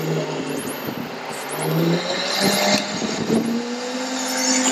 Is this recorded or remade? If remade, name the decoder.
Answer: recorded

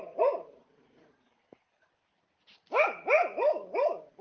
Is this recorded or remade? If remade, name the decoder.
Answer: recorded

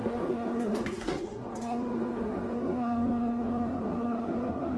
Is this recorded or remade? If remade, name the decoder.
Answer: remade, codec, SNAC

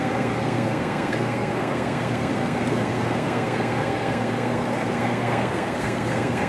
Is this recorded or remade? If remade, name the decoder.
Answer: remade, codec, SNAC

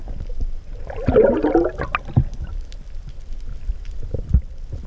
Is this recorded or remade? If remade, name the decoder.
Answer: recorded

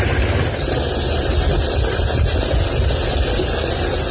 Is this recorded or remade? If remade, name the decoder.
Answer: recorded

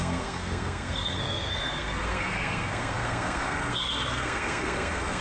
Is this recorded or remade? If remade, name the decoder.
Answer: remade, codec, SNAC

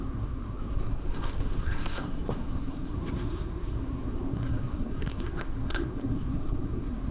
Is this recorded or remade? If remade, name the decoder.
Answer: remade, codec, SNAC